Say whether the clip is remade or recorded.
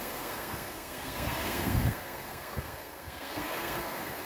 remade